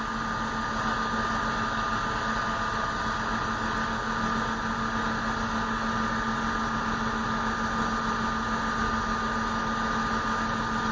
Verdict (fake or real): real